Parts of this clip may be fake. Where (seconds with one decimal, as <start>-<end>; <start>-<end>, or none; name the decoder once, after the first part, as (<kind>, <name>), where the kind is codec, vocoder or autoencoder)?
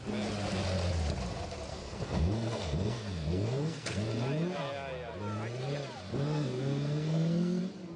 1.7-4.1 (codec, SNAC); 6.1-7.6